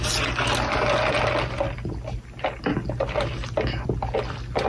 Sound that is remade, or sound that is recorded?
recorded